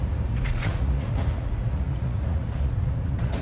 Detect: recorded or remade remade